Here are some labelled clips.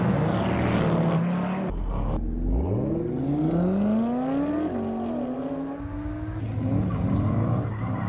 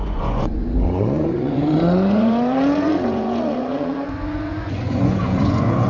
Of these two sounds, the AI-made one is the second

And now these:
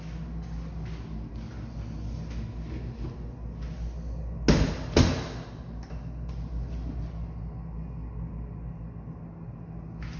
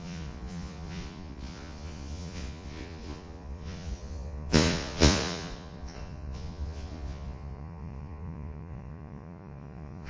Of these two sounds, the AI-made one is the second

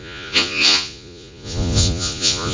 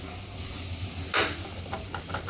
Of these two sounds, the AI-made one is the first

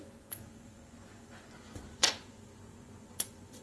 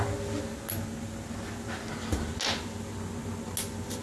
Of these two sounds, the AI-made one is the first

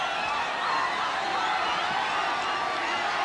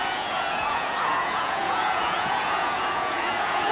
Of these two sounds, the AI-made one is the second